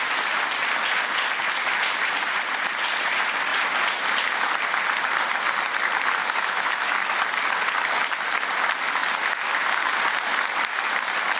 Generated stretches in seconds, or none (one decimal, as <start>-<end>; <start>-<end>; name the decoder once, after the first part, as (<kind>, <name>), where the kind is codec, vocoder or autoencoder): 6.2-7.2 (autoencoder, DAC-VAE)